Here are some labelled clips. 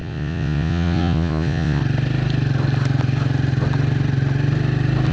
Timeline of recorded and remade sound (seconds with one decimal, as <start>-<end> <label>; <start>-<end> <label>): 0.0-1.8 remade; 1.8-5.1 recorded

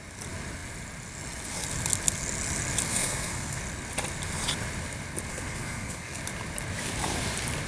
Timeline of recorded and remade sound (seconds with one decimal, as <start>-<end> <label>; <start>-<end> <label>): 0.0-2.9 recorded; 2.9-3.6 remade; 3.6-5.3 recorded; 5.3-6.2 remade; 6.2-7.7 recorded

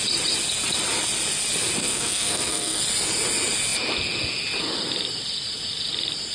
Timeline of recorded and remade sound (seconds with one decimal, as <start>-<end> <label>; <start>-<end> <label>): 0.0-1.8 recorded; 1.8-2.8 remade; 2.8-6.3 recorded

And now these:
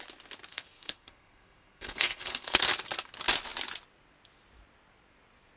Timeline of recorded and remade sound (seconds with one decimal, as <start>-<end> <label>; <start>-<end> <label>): 0.0-0.5 recorded; 0.5-2.7 remade; 2.7-5.6 recorded